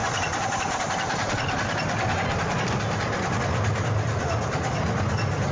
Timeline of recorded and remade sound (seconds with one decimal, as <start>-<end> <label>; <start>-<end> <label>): 0.0-5.5 recorded